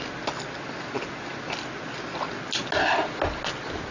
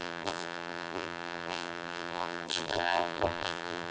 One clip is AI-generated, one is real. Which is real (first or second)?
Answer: first